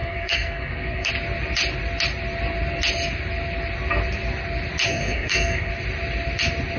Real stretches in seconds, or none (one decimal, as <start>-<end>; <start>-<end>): 1.1-4.9; 5.7-6.8